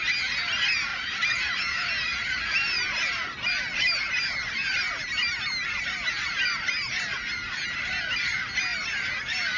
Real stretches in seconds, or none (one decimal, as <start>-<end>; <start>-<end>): 0.0-0.9; 6.1-9.6